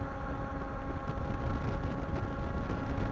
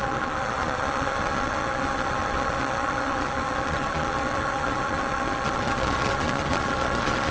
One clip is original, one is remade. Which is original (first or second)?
first